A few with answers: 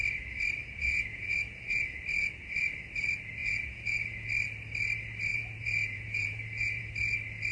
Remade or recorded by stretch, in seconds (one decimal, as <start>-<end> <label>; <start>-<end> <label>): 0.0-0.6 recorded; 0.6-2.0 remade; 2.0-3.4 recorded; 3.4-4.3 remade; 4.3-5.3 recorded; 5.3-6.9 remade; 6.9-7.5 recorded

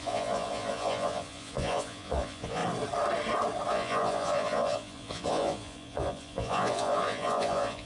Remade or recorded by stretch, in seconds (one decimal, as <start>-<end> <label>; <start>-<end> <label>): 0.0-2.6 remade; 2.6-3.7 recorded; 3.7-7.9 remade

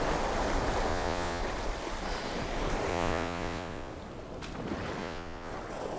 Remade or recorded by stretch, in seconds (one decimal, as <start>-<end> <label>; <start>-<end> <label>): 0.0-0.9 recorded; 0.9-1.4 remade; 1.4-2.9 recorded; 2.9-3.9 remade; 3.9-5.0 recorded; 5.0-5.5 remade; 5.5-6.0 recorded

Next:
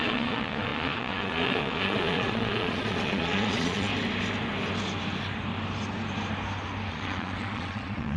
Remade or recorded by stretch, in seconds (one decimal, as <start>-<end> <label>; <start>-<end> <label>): 0.0-3.9 remade; 3.9-6.9 recorded; 6.9-8.2 remade

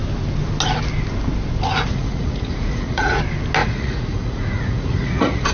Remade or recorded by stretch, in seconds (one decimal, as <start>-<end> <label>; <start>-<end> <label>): 0.0-1.9 recorded; 1.9-3.2 remade; 3.2-3.6 recorded; 3.6-5.5 remade

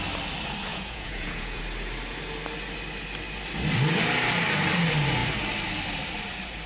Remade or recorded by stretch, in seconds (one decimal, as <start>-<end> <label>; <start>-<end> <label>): 0.0-0.7 recorded; 0.7-1.6 remade; 1.6-6.7 recorded